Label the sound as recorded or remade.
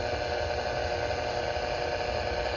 recorded